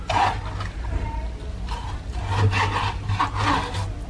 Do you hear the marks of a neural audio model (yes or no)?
no